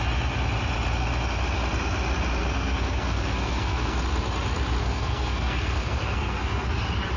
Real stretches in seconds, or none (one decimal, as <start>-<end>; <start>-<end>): 0.0-2.4; 4.0-4.8; 6.8-7.2

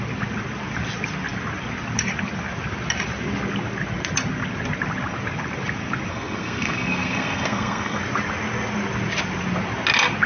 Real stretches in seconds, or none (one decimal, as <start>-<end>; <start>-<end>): 0.0-6.1; 8.0-10.3

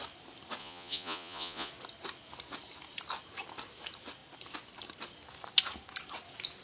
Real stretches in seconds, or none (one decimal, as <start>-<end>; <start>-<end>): 0.0-0.6; 1.7-6.6